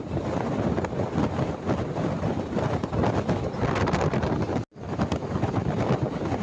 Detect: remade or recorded recorded